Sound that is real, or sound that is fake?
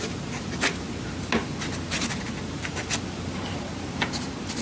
real